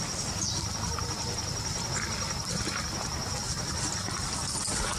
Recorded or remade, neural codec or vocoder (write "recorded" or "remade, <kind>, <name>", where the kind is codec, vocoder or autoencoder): recorded